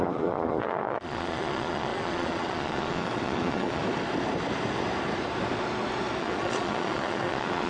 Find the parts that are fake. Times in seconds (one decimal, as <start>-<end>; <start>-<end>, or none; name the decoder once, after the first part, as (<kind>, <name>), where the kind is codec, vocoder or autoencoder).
0.0-3.8 (vocoder, Vocos); 6.2-7.7